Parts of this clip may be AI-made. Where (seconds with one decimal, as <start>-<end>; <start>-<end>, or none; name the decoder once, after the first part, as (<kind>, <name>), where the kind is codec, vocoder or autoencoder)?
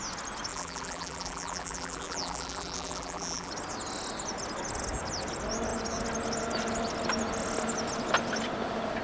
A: 0.5-3.5 (vocoder, BigVGAN v2)